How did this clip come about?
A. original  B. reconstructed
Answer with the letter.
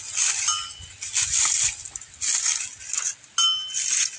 A